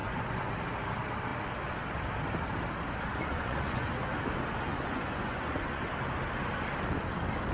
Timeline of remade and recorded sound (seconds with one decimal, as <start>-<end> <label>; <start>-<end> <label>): 0.0-0.5 remade; 0.5-3.1 recorded; 3.1-3.9 remade; 3.9-4.7 recorded; 4.7-5.8 remade; 5.8-7.5 recorded